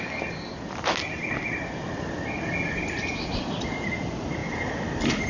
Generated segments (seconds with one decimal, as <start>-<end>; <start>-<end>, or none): 4.4-5.3